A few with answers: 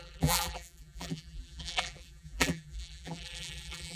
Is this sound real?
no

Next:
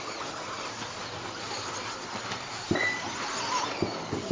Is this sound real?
yes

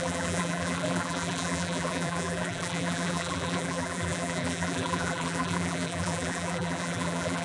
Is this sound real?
no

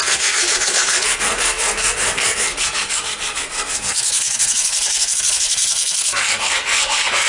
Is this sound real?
no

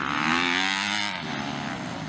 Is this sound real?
yes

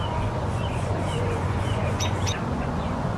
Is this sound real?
no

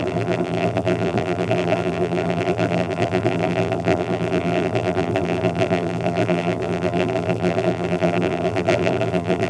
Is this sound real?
no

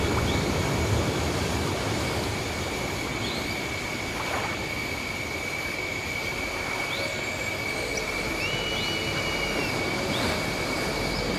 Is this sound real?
yes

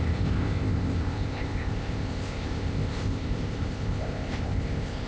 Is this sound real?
no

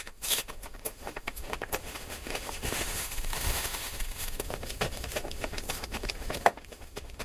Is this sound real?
no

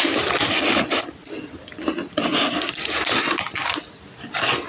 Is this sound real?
yes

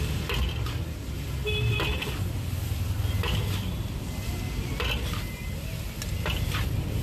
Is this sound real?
yes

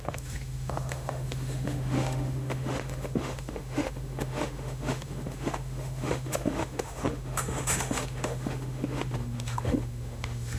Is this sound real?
no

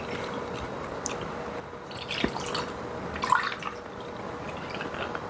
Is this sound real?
yes